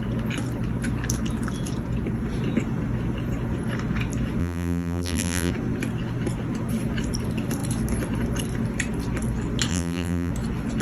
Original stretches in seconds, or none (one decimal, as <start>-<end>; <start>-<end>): 0.0-4.4; 5.5-9.7; 10.3-10.8